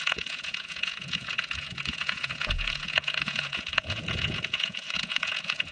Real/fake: fake